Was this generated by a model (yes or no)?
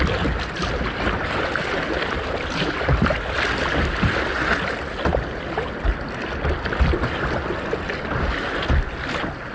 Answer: no